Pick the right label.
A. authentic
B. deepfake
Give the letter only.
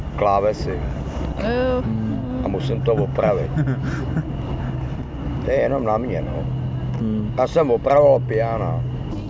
A